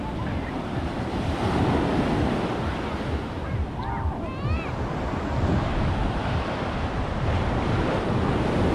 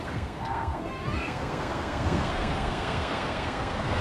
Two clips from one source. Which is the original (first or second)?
first